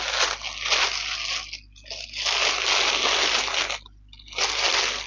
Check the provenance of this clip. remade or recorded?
recorded